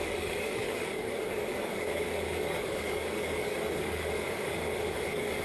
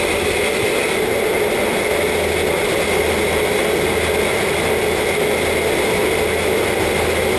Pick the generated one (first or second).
first